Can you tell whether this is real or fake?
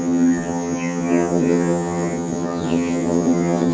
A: fake